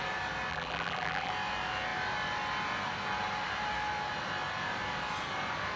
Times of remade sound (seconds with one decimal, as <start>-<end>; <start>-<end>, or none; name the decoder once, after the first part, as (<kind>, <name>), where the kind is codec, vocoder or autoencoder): 0.5-1.3 (vocoder, BigVGAN v2)